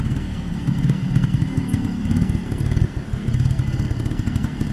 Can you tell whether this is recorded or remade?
remade